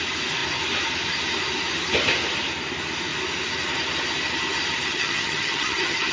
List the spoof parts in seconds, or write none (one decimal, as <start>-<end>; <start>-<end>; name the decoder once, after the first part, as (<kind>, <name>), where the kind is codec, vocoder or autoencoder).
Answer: 4.9-6.1 (vocoder, HiFi-GAN)